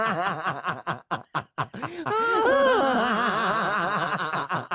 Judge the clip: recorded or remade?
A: recorded